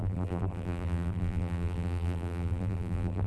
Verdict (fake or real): fake